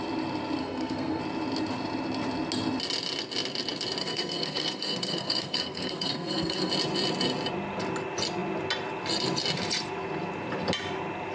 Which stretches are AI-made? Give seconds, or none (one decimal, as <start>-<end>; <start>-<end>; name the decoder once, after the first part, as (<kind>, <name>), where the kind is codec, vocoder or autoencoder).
0.6-1.2 (codec, SNAC); 4.0-6.7